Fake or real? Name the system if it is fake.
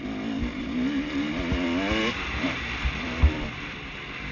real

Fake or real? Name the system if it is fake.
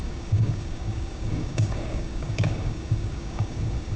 fake, codec, DAC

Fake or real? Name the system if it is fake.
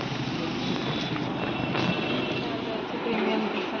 real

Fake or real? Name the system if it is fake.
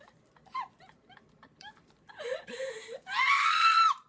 fake, vocoder, BigVGAN v2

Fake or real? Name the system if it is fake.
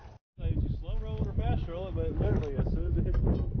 real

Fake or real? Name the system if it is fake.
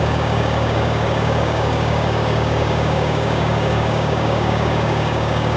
fake, codec, DAC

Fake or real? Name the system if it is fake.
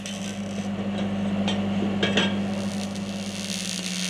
real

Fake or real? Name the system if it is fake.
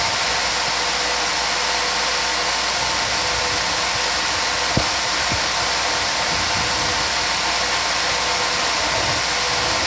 real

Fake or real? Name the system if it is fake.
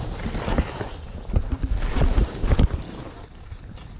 real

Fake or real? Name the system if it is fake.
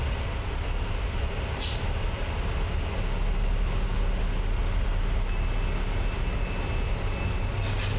real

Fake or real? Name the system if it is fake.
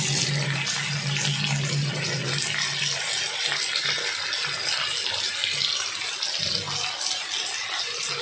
real